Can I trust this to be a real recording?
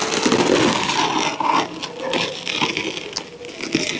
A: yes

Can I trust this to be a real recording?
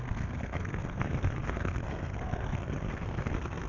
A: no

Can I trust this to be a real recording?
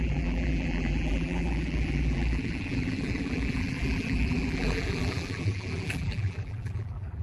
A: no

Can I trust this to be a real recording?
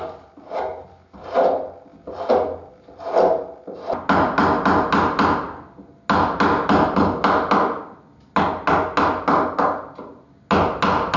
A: yes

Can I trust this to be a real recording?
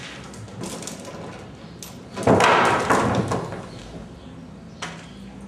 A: yes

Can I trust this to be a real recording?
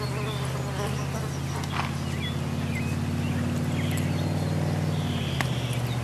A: yes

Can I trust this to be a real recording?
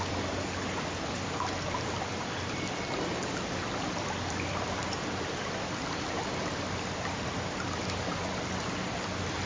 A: no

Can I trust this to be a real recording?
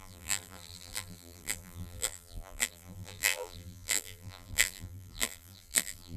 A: no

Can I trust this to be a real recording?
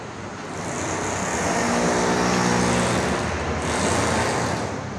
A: yes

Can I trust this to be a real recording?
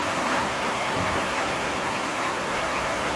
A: no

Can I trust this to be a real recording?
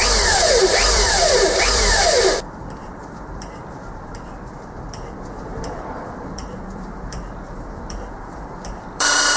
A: no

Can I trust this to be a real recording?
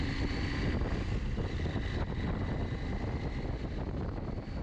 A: yes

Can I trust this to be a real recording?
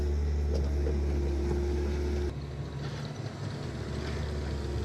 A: yes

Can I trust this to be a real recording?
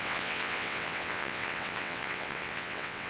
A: no